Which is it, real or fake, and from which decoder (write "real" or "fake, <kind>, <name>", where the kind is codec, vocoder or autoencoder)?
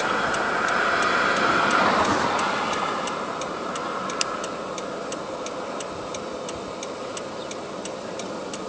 real